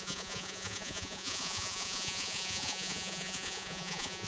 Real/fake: fake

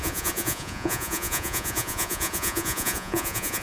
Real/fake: fake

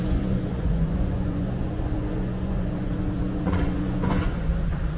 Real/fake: fake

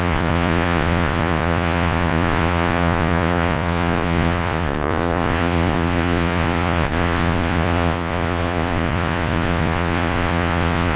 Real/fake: fake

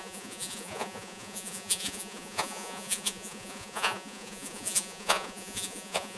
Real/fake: fake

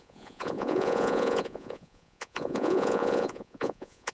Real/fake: fake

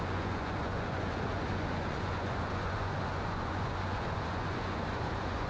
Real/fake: fake